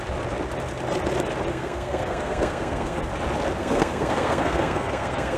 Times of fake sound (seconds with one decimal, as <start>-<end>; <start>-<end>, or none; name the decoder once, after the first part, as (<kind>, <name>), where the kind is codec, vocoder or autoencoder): 1.5-3.0 (codec, SNAC); 3.6-5.4